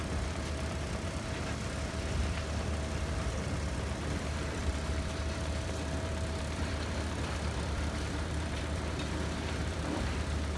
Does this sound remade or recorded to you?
remade